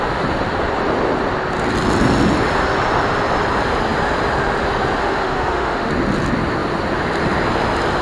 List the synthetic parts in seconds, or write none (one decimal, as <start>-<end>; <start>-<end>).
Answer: 5.0-5.9